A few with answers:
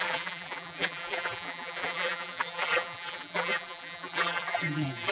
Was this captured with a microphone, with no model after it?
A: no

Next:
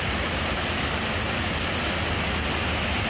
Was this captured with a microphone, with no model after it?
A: yes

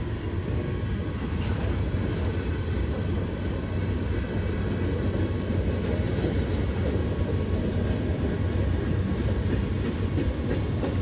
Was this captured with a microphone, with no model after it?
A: yes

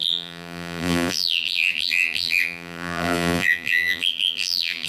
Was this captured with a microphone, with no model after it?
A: no